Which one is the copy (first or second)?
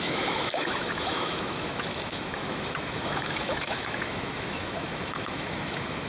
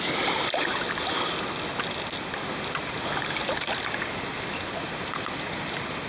first